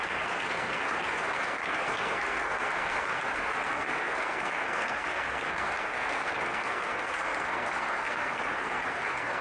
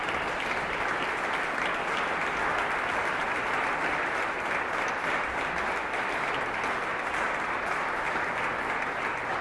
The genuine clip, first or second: second